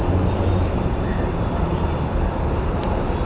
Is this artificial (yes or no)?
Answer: no